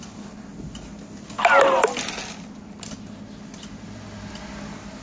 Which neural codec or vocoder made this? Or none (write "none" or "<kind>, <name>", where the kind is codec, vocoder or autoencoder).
none